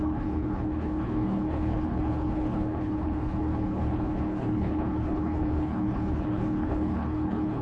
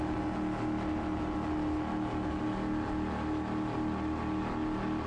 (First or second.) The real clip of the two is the second